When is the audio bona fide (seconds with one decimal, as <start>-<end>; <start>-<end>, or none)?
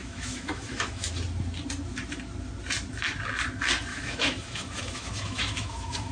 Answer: 1.1-3.9